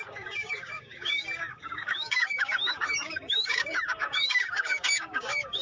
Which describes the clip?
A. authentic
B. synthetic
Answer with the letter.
B